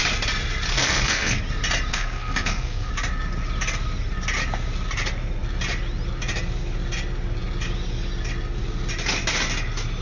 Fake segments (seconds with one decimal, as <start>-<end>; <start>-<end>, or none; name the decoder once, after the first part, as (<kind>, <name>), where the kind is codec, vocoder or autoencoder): 0.7-1.4 (codec, SNAC); 1.9-2.9